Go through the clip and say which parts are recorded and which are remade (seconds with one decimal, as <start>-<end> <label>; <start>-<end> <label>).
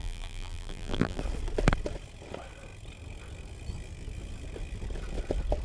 0.0-1.2 remade; 1.2-5.6 recorded